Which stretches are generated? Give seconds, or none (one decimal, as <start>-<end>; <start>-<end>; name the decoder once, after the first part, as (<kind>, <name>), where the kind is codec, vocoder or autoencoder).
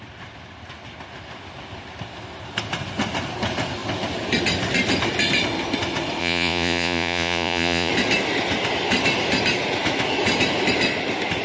6.2-7.9 (vocoder, Vocos)